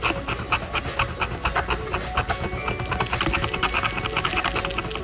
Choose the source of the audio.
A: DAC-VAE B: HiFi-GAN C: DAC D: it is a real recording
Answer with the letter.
D